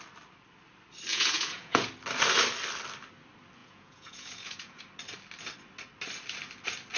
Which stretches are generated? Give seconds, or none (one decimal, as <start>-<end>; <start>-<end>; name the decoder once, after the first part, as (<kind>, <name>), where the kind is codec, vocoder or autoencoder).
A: 1.1-1.9 (vocoder, Vocos); 3.6-4.8